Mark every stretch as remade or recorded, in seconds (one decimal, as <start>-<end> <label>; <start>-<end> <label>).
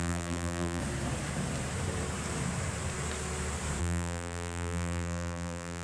0.0-0.8 remade; 0.8-3.8 recorded; 3.8-5.8 remade